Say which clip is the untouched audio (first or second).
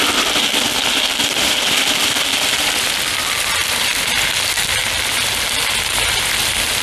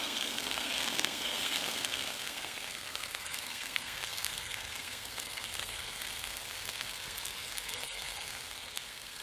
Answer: first